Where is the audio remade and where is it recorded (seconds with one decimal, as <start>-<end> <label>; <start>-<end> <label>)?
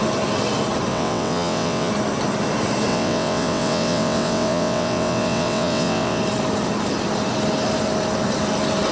0.0-0.9 recorded; 0.9-1.9 remade; 1.9-2.9 recorded; 2.9-6.2 remade; 6.2-8.9 recorded